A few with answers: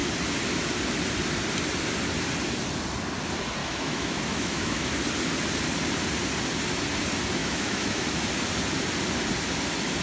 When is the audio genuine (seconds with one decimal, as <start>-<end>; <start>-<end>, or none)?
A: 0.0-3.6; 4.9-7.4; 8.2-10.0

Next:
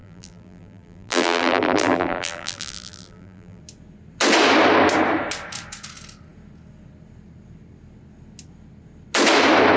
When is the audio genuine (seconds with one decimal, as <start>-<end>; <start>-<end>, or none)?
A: 3.6-9.8

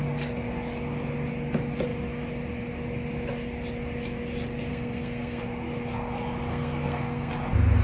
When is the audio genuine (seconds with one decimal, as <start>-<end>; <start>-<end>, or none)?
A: 0.0-4.7; 5.4-6.5; 7.3-7.8

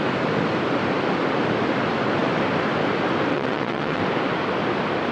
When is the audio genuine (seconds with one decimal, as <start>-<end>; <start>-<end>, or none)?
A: 0.0-3.3; 4.0-5.1

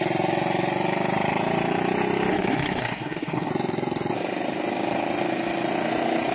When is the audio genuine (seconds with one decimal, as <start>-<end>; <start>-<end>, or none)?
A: 0.0-2.3; 3.5-6.3

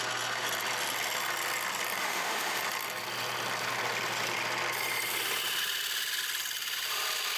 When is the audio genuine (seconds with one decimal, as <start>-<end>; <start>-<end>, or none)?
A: 0.0-2.0; 2.6-7.4